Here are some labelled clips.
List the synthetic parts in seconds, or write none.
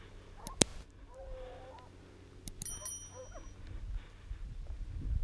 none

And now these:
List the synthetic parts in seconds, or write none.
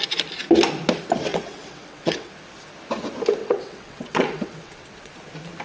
1.3-2.3 (vocoder, WaveNeXt); 3.4-5.1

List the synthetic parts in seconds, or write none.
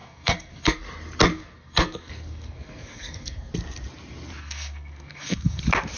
0.0-0.8 (codec, SNAC); 1.3-3.5; 4.4-5.6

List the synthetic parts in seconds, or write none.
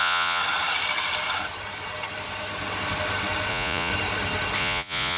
0.0-0.4 (vocoder, Vocos); 3.5-3.9; 4.6-5.2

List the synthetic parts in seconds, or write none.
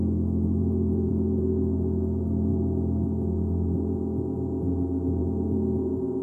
0.6-1.1 (vocoder, BigVGAN v2)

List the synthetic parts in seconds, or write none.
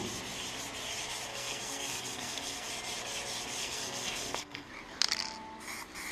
1.3-2.7 (codec, SNAC); 3.6-4.7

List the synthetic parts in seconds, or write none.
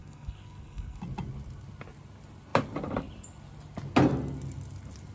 0.0-1.0 (codec, SNAC)